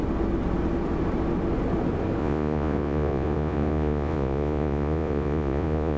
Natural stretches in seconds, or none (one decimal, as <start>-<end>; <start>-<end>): 0.0-2.2